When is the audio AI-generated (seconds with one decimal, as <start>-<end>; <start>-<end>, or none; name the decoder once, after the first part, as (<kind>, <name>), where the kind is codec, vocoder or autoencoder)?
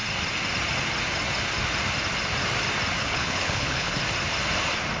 3.0-4.0 (codec, HILCodec)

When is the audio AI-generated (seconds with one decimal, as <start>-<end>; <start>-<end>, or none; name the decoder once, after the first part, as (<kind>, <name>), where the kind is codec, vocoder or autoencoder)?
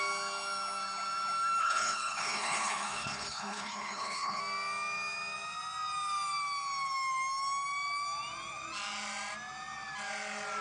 1.6-4.4 (codec, HILCodec)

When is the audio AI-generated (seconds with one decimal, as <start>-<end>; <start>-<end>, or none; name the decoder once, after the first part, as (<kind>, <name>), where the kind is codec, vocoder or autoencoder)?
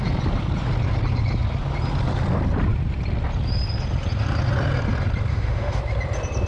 5.3-5.8 (autoencoder, DAC-VAE)